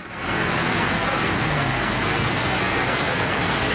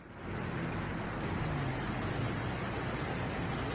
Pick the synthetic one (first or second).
first